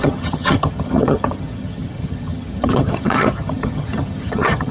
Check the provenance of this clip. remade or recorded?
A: remade